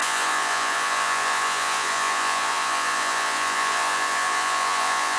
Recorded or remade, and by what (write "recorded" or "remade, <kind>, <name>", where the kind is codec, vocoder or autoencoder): remade, vocoder, Vocos